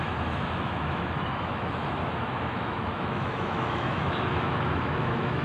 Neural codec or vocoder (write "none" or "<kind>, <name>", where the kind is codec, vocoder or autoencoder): autoencoder, DAC-VAE